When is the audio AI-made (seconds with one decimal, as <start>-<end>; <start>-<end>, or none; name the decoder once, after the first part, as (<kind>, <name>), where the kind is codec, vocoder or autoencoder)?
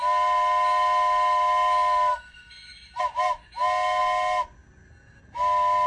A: 2.1-3.0 (autoencoder, DAC-VAE)